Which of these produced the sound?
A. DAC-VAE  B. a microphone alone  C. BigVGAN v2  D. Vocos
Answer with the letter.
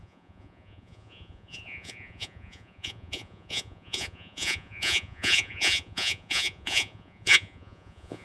D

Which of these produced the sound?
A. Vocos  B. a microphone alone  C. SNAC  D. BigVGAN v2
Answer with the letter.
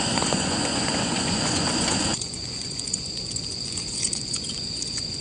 A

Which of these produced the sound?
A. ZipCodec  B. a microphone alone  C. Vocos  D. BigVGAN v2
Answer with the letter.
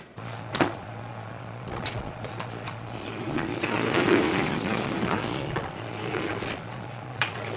C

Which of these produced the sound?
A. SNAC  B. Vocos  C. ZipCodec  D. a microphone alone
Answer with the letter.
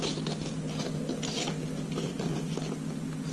D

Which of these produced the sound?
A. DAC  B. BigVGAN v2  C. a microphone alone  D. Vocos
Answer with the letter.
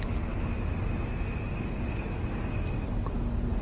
C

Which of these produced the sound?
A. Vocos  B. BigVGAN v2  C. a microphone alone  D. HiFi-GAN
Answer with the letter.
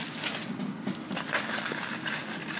C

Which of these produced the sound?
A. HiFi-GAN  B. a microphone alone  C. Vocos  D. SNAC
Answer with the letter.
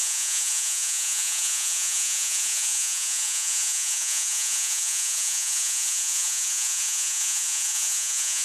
C